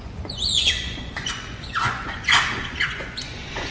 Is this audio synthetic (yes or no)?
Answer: yes